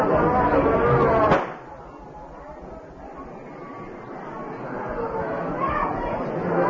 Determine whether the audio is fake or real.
real